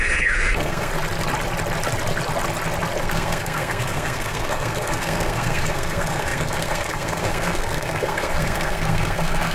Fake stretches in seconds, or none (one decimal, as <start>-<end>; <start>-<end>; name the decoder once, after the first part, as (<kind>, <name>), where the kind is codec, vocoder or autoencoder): 0.0-0.9 (codec, SNAC); 3.0-9.5